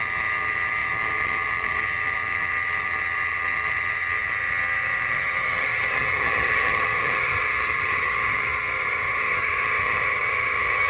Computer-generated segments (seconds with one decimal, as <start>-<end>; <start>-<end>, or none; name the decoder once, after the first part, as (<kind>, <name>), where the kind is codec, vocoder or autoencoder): 0.0-10.9 (vocoder, HiFi-GAN)